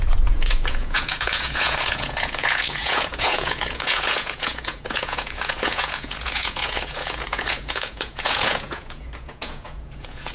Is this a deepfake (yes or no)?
yes